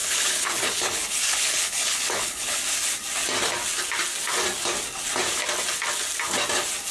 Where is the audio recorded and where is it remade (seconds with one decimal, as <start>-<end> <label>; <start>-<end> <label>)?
0.0-2.6 remade; 2.6-6.9 recorded